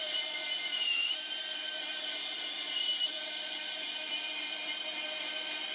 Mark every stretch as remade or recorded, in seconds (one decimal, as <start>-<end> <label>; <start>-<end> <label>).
0.0-1.3 remade; 1.3-1.9 recorded; 1.9-5.3 remade; 5.3-5.7 recorded